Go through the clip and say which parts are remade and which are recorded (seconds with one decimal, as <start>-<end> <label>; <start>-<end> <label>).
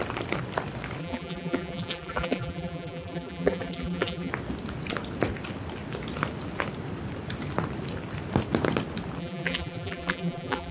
0.0-1.0 recorded; 1.0-4.3 remade; 4.3-9.2 recorded; 9.2-10.7 remade